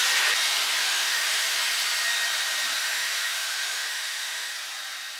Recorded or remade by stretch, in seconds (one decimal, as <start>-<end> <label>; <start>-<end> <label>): 0.0-0.8 recorded; 0.8-1.6 remade; 1.6-2.8 recorded; 2.8-4.5 remade; 4.5-5.2 recorded